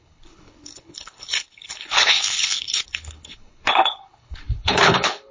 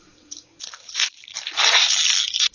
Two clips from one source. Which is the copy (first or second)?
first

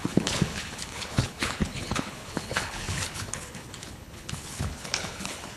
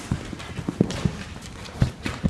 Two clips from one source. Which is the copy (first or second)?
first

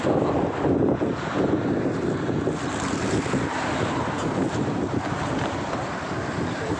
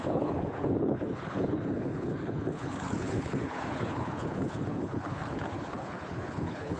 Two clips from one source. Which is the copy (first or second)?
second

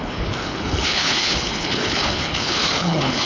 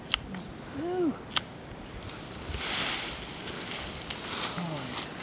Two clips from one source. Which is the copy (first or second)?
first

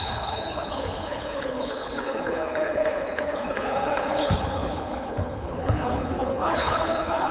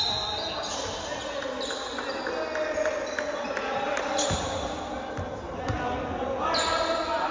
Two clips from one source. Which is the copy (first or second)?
first